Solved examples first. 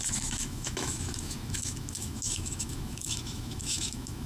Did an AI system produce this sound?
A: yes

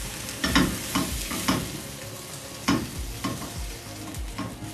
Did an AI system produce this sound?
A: no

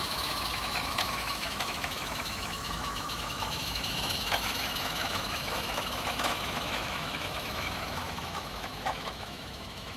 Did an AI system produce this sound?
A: yes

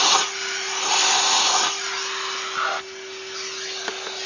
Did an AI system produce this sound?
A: no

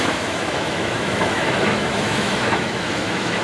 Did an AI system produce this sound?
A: yes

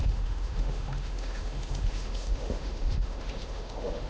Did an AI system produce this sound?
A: yes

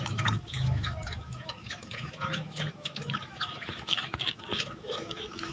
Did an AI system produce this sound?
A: yes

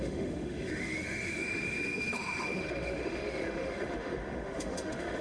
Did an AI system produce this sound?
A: yes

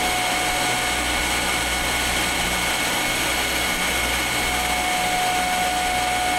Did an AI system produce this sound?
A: no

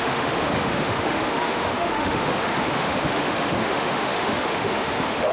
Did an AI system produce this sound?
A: yes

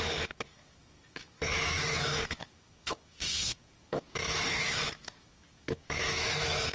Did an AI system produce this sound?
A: yes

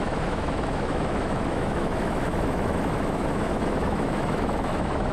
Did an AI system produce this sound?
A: yes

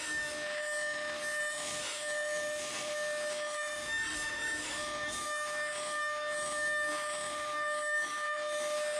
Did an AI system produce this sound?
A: yes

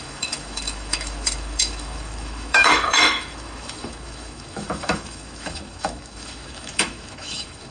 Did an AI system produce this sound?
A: yes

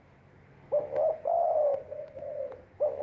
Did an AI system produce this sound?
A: yes